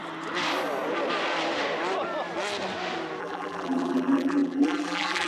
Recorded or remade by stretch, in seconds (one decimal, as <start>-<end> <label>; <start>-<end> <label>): 0.0-3.2 recorded; 3.2-5.3 remade